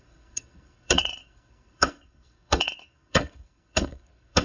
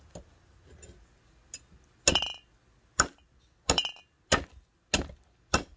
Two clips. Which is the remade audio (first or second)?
first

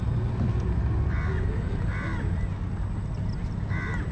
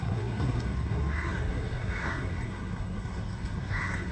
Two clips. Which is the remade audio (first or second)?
second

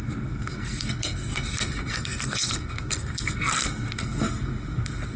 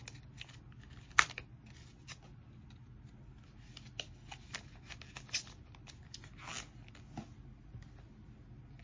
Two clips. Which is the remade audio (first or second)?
first